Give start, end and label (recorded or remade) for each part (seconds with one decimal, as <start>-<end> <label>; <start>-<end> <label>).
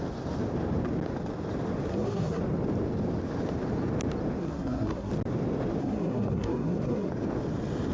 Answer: 0.0-1.9 recorded; 1.9-2.4 remade; 2.4-4.4 recorded; 4.4-5.1 remade; 5.1-5.8 recorded; 5.8-7.1 remade; 7.1-7.9 recorded